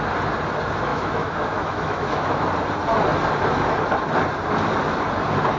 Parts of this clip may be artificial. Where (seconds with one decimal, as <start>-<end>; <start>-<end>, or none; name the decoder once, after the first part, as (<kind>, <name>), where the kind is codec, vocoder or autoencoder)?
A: 0.9-2.4 (autoencoder, DAC-VAE)